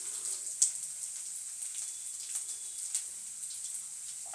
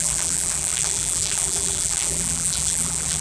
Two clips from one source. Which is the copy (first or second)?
second